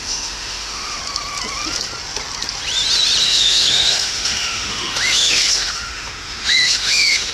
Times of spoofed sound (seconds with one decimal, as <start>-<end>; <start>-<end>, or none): 0.0-1.0; 3.2-7.3